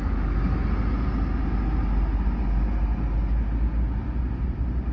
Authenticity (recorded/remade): recorded